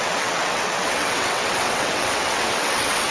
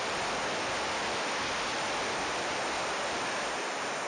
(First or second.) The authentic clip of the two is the second